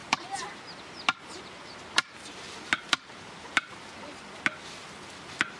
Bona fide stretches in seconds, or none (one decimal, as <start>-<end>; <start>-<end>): 0.0-5.6